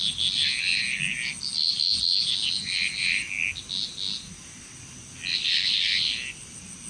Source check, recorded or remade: recorded